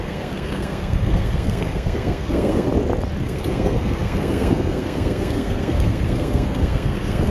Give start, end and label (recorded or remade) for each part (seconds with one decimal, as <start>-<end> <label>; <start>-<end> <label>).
0.0-2.7 remade; 2.7-3.2 recorded; 3.2-7.3 remade